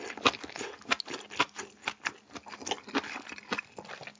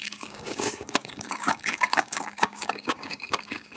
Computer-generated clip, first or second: second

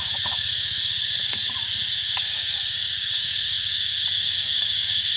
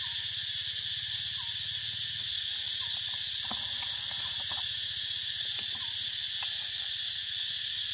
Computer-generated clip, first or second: first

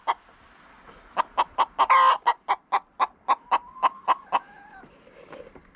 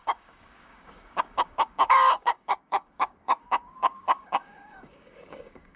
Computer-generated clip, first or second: second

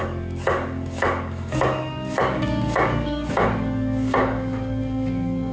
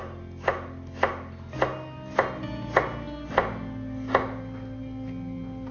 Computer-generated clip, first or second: first